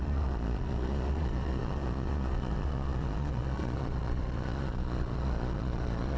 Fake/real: fake